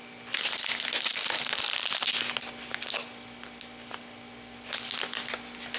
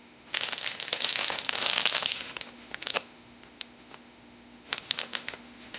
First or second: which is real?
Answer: first